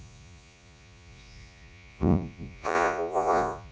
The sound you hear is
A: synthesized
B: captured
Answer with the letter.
A